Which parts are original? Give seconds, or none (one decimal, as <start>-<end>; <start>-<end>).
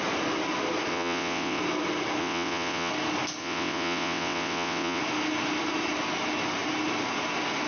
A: 0.0-0.9; 1.6-2.2; 2.9-3.4; 5.0-7.7